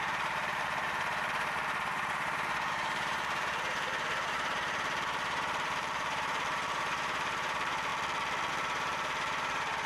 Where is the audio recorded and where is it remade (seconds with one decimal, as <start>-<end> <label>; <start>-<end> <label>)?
0.0-7.9 remade; 7.9-8.5 recorded; 8.5-9.9 remade